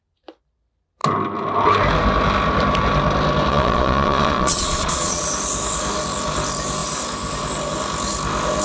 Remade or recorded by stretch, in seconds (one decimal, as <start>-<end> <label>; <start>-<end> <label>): 0.0-3.5 recorded; 3.5-5.2 remade; 5.2-8.6 recorded